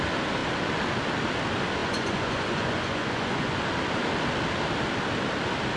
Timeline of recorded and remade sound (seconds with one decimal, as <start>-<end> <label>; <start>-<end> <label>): 0.0-1.8 recorded; 1.8-3.6 remade; 3.6-5.8 recorded